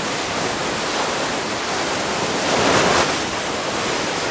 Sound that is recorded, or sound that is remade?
recorded